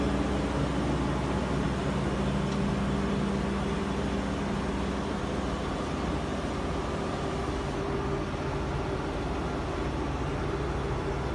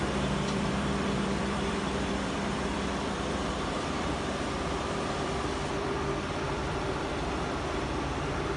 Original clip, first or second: first